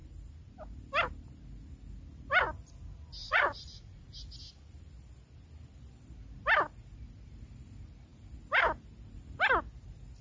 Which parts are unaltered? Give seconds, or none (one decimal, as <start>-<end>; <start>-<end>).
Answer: 0.0-3.2; 4.2-10.2